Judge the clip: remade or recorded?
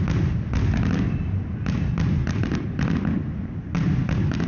recorded